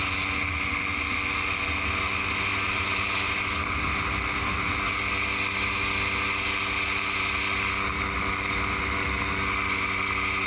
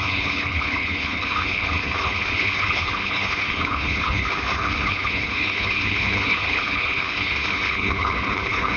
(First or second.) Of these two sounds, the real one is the first